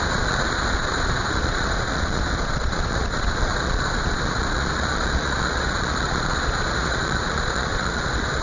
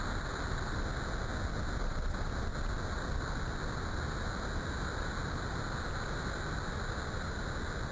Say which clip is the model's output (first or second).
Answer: first